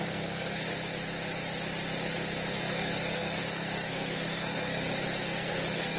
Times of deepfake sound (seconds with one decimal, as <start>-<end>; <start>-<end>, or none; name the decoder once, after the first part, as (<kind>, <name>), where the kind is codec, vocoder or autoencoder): 0.0-0.6 (codec, SNAC); 2.5-6.0